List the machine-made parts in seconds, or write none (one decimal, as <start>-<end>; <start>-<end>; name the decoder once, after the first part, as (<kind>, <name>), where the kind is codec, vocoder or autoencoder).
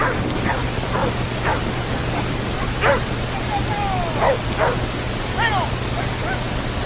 none